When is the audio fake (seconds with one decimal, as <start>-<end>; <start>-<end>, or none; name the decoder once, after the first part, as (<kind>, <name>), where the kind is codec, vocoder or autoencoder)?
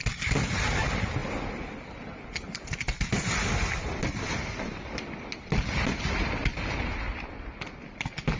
none